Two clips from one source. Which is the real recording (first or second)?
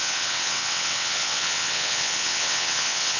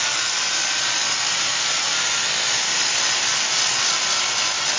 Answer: second